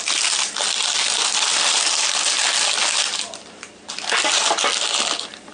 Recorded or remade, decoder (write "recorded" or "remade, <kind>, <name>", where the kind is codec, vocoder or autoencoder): recorded